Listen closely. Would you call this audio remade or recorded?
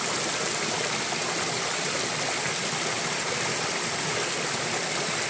recorded